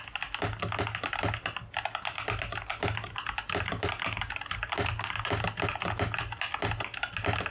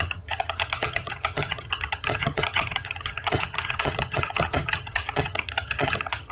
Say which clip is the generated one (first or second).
second